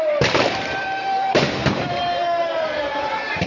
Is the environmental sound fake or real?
fake